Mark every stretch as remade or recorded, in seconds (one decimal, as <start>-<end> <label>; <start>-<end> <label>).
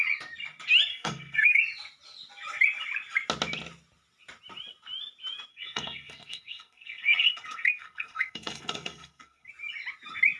0.0-0.9 recorded; 0.9-1.6 remade; 1.6-5.5 recorded; 5.5-9.5 remade; 9.5-10.4 recorded